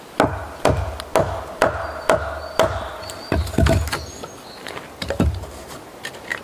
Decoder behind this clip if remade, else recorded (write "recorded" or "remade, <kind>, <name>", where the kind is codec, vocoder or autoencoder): recorded